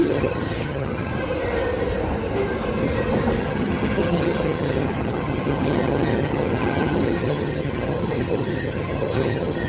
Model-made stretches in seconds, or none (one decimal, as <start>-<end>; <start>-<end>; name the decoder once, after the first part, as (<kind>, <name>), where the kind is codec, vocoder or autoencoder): 0.0-1.1 (vocoder, HiFi-GAN); 3.4-9.7